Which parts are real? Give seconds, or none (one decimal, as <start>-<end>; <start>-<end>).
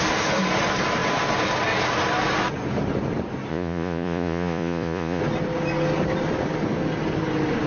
0.0-3.5; 5.2-7.7